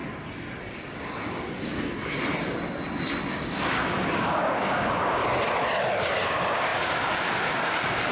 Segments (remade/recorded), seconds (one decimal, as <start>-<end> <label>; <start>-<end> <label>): 0.0-0.6 recorded; 0.6-2.2 remade; 2.2-3.3 recorded; 3.3-5.2 remade; 5.2-6.1 recorded; 6.1-8.1 remade